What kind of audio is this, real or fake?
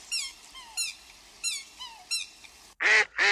real